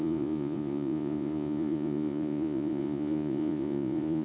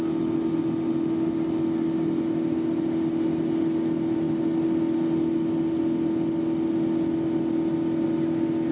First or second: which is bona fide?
second